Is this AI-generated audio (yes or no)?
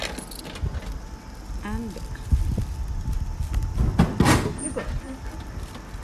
no